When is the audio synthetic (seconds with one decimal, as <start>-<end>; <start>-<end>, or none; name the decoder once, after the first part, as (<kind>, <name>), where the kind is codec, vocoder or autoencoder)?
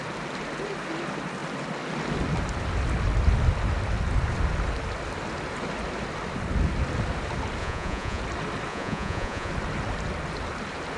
7.6-8.2 (vocoder, Vocos); 8.7-9.5